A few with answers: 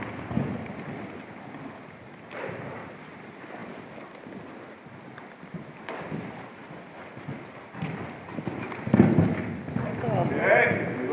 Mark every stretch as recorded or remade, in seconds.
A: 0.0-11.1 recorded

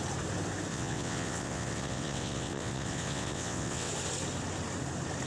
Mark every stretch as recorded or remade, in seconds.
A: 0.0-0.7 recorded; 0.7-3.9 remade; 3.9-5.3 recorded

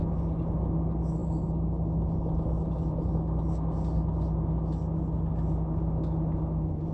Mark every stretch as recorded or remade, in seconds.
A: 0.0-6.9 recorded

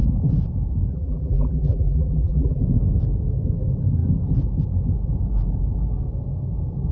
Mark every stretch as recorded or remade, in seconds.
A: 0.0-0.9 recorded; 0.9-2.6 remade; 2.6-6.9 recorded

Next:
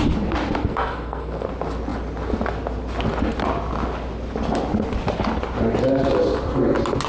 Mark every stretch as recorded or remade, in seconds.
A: 0.0-0.6 recorded; 0.6-1.5 remade; 1.5-7.1 recorded

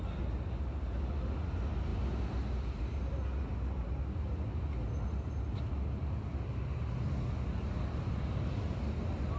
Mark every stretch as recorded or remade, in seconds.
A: 0.0-9.4 recorded

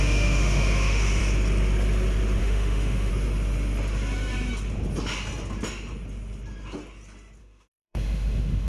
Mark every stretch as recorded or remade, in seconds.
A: 0.0-1.2 remade; 1.2-2.4 recorded; 2.4-3.1 remade; 3.1-7.4 recorded; 7.4-8.7 remade